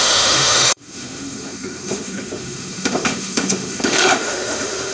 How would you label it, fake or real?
fake